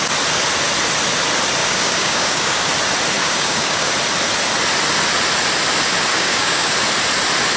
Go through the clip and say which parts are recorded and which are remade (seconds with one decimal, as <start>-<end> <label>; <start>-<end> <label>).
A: 0.0-1.6 recorded; 1.6-2.7 remade; 2.7-3.2 recorded; 3.2-3.9 remade; 3.9-6.1 recorded; 6.1-6.7 remade; 6.7-7.6 recorded